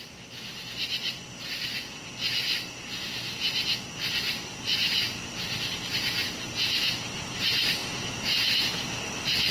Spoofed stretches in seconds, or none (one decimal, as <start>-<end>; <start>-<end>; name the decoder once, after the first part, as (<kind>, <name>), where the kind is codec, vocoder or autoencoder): none